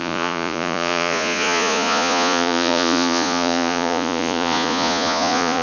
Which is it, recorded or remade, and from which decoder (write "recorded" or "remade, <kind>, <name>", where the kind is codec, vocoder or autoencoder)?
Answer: remade, vocoder, Vocos